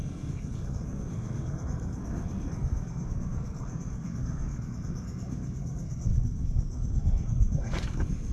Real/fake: fake